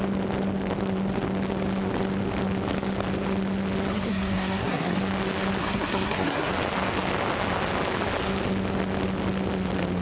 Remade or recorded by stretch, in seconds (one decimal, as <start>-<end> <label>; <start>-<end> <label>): 0.0-3.9 recorded; 3.9-5.0 remade; 5.0-5.6 recorded; 5.6-6.5 remade; 6.5-10.0 recorded